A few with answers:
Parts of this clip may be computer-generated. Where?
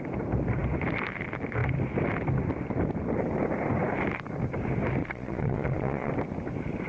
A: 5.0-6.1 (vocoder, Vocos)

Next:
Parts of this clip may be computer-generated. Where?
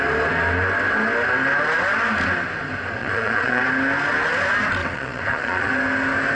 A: 3.0-3.6 (vocoder, Vocos); 4.8-5.7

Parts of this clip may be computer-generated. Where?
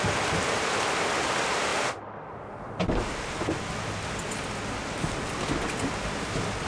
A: none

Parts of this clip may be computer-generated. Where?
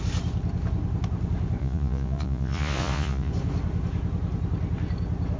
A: 1.6-3.3 (vocoder, Vocos)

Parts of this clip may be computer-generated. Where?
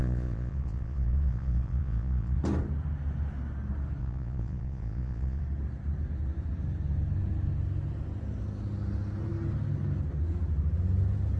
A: 0.0-2.4 (vocoder, Vocos); 4.0-5.4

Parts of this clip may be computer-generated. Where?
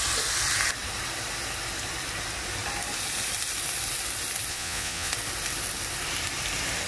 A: 4.5-5.1 (vocoder, Vocos)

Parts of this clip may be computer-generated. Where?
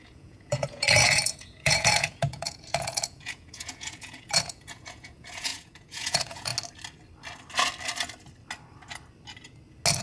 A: 0.0-6.5 (vocoder, Vocos)